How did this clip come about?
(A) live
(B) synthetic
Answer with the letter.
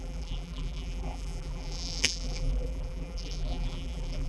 B